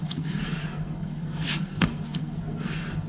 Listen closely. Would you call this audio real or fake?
fake